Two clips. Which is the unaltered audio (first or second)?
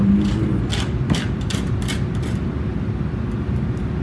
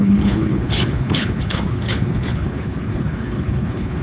first